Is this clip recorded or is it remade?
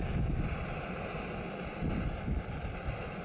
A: recorded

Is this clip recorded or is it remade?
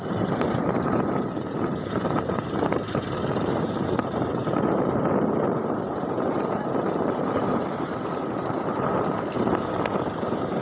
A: remade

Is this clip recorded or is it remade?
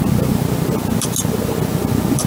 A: recorded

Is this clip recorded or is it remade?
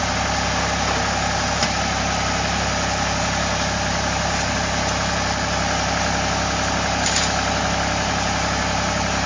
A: recorded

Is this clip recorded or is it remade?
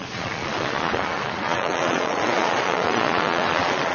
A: remade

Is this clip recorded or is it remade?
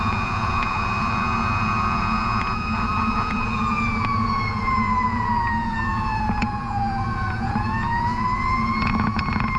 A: remade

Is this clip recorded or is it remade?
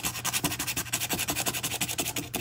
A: recorded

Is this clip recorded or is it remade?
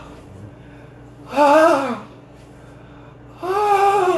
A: recorded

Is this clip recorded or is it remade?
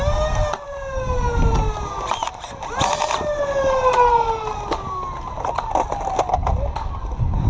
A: recorded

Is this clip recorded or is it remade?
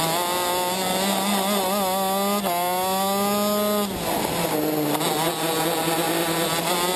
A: recorded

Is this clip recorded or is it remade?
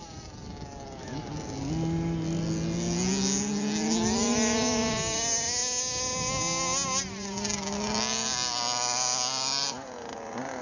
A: recorded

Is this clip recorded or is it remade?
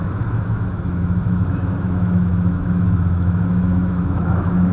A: remade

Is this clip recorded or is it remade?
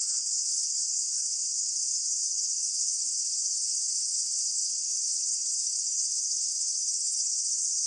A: remade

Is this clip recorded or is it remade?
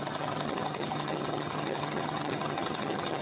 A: remade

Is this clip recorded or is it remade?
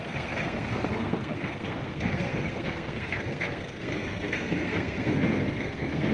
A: remade